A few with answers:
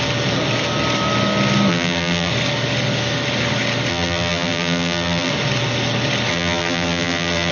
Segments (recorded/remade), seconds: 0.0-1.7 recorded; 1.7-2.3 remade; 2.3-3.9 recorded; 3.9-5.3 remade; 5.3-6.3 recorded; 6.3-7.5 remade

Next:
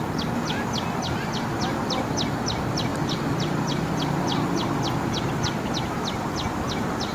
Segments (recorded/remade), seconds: 0.0-7.1 recorded

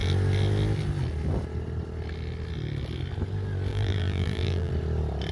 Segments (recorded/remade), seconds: 0.0-3.7 recorded; 3.7-4.7 remade; 4.7-5.3 recorded

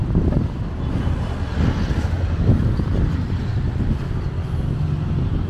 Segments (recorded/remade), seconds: 0.0-5.5 recorded